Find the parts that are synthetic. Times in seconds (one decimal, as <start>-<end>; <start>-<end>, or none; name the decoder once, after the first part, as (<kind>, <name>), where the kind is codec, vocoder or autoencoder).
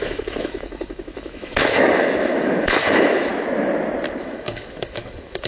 0.0-3.3 (autoencoder, DAC-VAE); 4.2-5.5